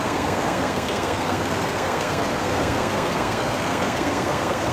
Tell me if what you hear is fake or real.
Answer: fake